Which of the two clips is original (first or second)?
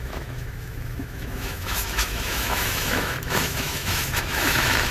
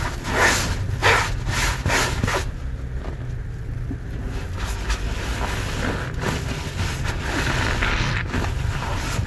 second